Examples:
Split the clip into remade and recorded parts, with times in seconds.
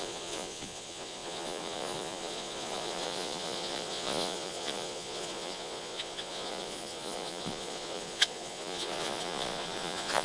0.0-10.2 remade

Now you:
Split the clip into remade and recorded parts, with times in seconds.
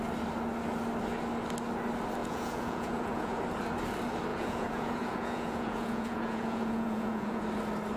0.0-2.2 recorded; 2.2-3.4 remade; 3.4-4.3 recorded; 4.3-7.4 remade; 7.4-8.0 recorded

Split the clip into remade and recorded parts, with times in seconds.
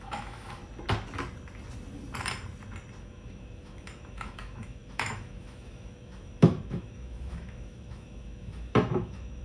0.0-0.6 remade; 0.6-3.0 recorded; 3.0-9.4 remade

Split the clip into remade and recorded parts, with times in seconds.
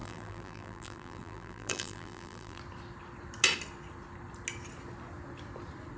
0.0-2.6 remade; 2.6-6.0 recorded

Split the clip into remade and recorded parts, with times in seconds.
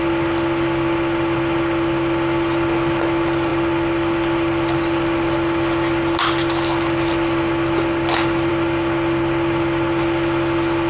0.0-10.9 recorded